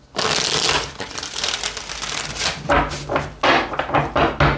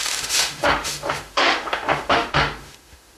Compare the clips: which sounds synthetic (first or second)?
second